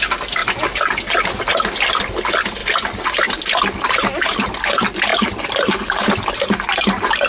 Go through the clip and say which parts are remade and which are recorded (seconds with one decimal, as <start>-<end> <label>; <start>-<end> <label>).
0.0-5.1 recorded; 5.1-6.4 remade; 6.4-7.3 recorded